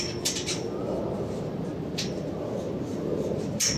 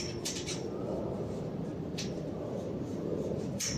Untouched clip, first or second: first